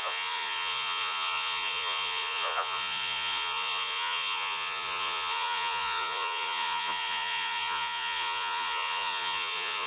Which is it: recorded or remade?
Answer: remade